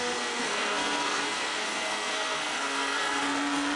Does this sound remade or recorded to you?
remade